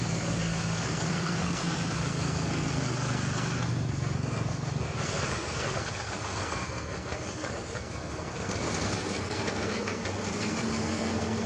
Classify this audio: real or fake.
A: fake